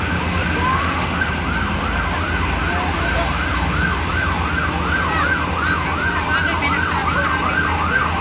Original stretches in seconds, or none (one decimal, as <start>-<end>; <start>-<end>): 0.0-0.7; 1.3-8.2